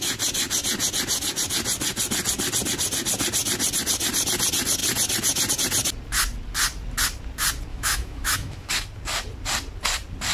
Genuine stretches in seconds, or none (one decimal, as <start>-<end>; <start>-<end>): 0.0-7.7; 8.7-10.3